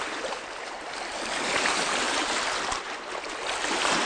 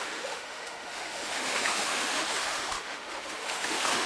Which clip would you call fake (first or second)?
second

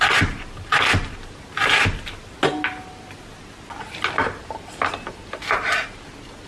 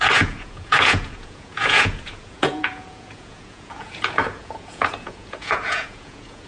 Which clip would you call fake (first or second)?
second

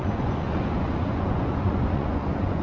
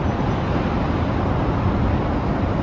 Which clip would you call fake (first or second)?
first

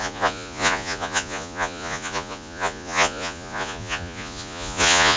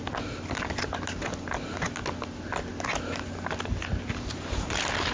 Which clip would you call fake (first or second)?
first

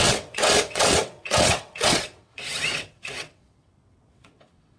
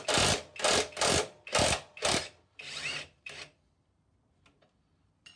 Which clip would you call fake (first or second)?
first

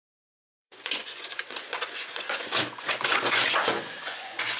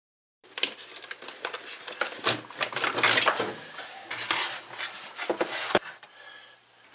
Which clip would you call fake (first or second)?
first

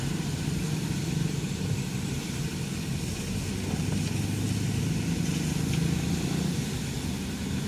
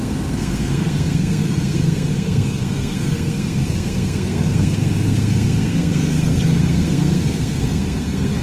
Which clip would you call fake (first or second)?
second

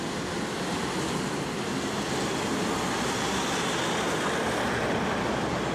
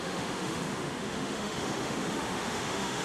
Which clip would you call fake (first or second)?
second